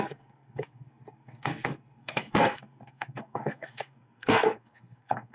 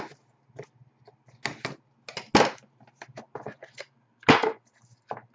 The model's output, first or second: first